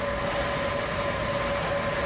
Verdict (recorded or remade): recorded